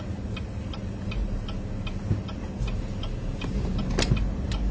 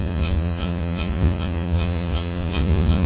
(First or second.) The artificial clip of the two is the second